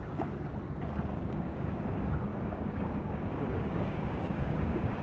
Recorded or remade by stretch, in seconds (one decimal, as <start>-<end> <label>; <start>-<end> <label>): 0.0-0.5 remade; 0.5-1.3 recorded; 1.3-5.0 remade

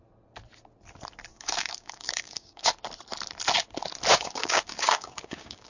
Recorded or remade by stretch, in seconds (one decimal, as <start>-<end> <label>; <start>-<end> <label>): 0.0-1.3 recorded; 1.3-2.7 remade; 2.7-4.1 recorded; 4.1-5.7 remade

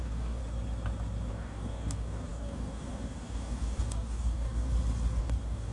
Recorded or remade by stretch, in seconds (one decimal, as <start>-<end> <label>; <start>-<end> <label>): 0.0-0.4 remade; 0.4-1.3 recorded; 1.3-4.7 remade; 4.7-5.2 recorded; 5.2-5.7 remade

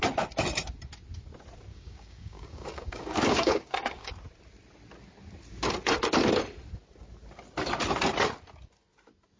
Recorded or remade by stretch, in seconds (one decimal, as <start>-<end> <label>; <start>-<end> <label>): 0.0-1.7 recorded; 1.7-4.1 remade; 4.1-9.4 recorded

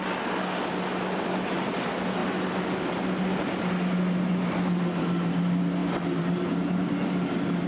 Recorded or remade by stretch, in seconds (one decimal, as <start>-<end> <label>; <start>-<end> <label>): 0.0-7.7 recorded

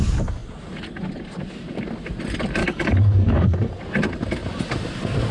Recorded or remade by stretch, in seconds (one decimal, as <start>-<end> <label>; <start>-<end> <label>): 0.0-2.6 recorded; 2.6-3.7 remade; 3.7-5.3 recorded

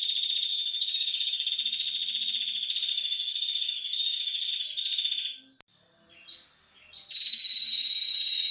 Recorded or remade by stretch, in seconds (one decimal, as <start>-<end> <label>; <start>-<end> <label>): 0.0-0.5 recorded; 0.5-1.5 remade; 1.5-2.9 recorded; 2.9-4.5 remade; 4.5-7.3 recorded; 7.3-8.5 remade